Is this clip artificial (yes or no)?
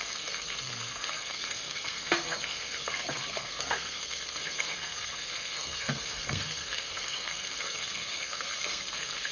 yes